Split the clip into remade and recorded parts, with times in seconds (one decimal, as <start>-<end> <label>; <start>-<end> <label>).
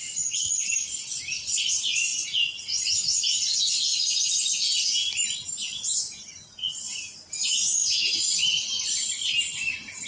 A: 0.0-5.6 recorded; 5.6-6.3 remade; 6.3-10.1 recorded